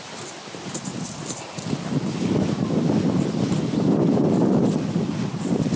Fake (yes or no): no